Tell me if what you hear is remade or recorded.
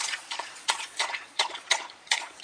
remade